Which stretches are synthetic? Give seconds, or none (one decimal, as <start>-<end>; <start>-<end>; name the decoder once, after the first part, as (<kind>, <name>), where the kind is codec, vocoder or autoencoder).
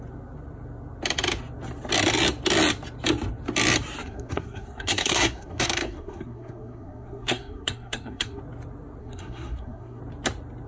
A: 4.0-8.4 (codec, SNAC); 9.0-10.0